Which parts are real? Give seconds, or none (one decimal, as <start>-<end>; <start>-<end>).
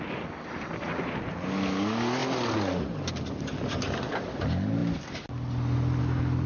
0.0-6.5